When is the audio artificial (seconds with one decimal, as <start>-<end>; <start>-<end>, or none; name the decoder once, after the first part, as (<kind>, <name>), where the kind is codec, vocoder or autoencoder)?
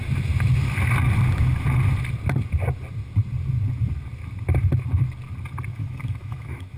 5.7-6.8 (autoencoder, DAC-VAE)